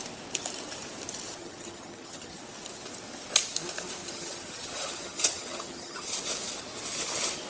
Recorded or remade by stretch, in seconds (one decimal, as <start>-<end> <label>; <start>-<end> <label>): 0.0-1.4 recorded; 1.4-2.4 remade; 2.4-4.0 recorded; 4.0-6.2 remade; 6.2-7.5 recorded